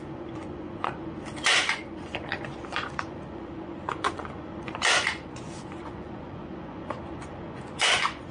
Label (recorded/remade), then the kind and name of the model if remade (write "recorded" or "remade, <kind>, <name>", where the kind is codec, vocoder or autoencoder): remade, vocoder, Vocos